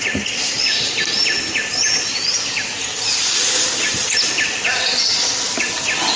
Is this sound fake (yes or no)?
no